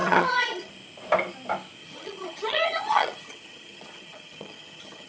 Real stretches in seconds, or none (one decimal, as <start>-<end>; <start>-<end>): 0.7-1.8